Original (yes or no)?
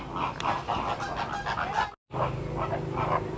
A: yes